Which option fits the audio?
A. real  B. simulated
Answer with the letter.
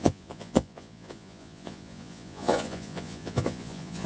B